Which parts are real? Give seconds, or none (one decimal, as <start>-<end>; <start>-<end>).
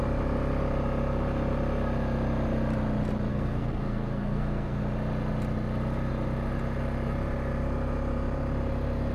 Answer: 0.0-3.3; 4.8-9.1